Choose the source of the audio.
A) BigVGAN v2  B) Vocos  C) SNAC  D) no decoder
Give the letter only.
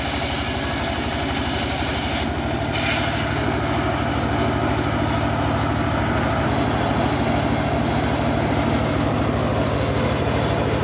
D